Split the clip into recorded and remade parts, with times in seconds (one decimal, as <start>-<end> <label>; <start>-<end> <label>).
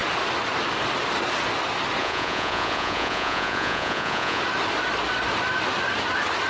0.0-2.0 recorded; 2.0-4.4 remade; 4.4-6.5 recorded